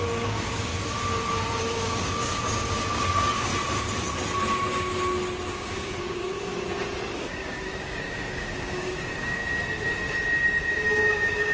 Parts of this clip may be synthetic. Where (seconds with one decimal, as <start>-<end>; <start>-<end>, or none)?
0.0-0.7; 1.6-3.5; 5.5-6.5; 7.1-9.4; 10.7-11.5